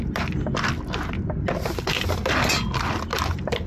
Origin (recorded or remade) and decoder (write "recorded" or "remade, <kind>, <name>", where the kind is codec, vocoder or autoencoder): recorded